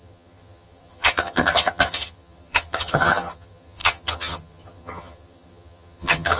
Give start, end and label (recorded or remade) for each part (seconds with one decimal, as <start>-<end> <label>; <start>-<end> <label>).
0.0-6.4 remade